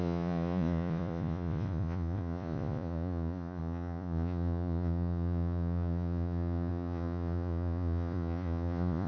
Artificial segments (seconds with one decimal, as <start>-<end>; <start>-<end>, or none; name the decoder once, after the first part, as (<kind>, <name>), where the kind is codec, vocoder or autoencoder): 0.0-9.1 (vocoder, Vocos)